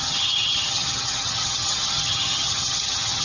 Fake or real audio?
fake